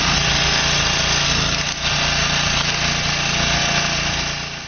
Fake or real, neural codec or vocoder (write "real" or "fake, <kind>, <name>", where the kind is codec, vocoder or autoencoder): real